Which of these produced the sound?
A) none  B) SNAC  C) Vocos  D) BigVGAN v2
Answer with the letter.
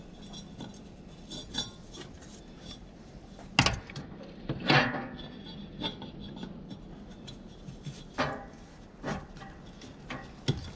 A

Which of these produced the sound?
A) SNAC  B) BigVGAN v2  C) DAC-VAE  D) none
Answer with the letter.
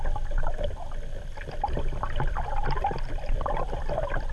D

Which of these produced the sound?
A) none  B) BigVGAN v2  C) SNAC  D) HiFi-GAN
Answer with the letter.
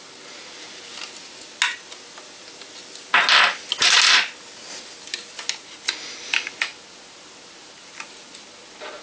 A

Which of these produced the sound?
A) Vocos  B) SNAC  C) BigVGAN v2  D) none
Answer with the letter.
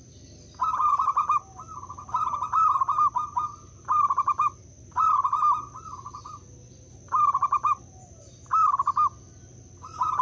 D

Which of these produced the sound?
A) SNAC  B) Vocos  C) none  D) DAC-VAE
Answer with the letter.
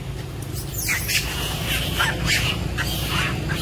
C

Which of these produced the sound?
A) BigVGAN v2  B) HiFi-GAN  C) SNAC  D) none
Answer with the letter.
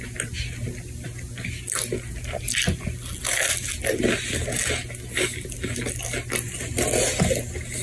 D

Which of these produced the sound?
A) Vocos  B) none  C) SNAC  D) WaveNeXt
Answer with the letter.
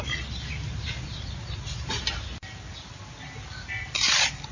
B